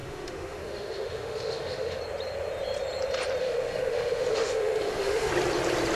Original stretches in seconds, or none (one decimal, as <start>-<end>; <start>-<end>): 2.0-3.4; 5.3-6.0

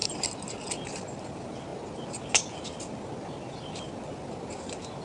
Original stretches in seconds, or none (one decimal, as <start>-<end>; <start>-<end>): 0.0-5.0

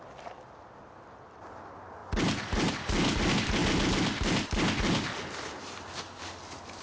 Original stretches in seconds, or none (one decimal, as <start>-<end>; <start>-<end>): 0.0-6.8

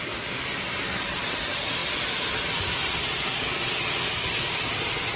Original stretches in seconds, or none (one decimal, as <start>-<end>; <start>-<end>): 0.0-5.2

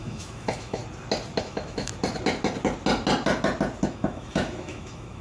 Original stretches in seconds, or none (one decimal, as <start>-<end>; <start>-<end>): 0.8-1.4; 1.9-3.9

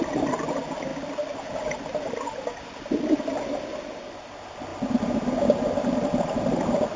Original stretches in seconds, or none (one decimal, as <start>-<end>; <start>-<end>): 0.0-7.0